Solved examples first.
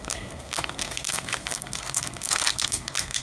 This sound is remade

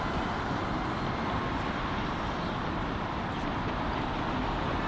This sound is remade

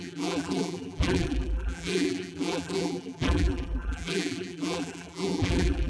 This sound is remade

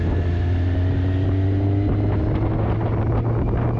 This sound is recorded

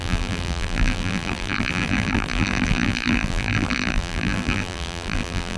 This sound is remade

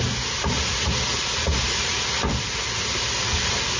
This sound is recorded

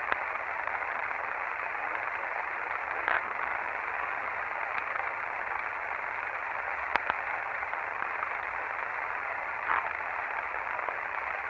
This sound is remade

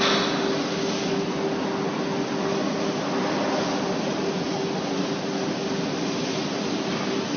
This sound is recorded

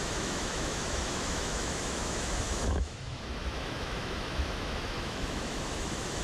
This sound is remade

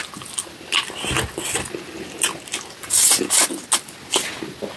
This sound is recorded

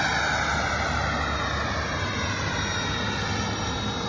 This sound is recorded